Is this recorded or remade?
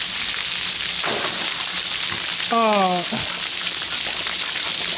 recorded